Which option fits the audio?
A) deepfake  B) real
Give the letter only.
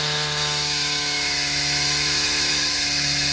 A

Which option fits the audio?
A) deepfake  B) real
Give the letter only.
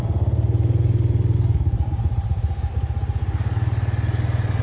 B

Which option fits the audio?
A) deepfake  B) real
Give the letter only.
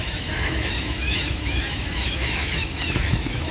A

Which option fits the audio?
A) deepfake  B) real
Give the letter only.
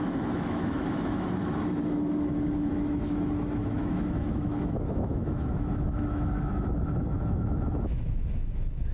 A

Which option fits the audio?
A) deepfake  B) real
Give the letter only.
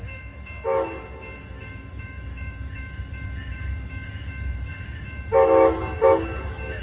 A